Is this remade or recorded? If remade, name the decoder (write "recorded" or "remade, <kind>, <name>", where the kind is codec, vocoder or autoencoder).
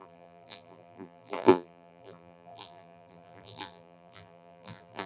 remade, vocoder, BigVGAN v2